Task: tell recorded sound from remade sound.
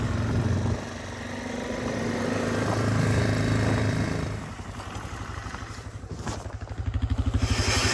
recorded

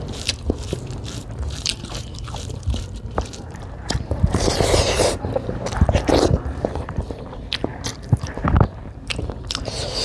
remade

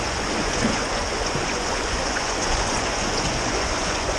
remade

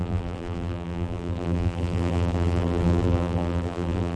remade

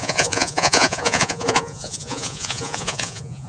remade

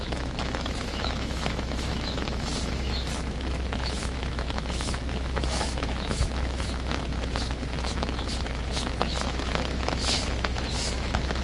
remade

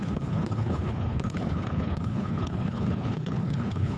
remade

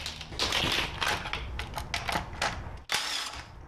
recorded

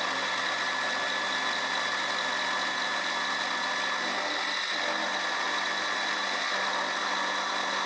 recorded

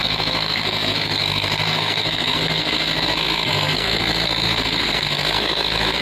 remade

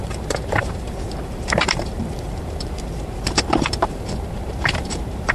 remade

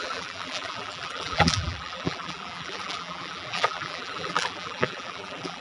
remade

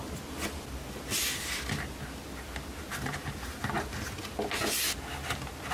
recorded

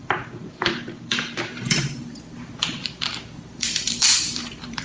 remade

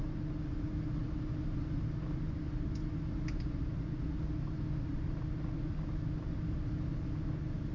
recorded